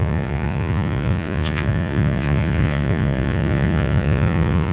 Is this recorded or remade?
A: remade